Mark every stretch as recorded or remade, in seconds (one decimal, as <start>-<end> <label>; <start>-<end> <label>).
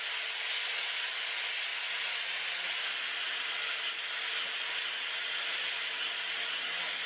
0.0-7.1 recorded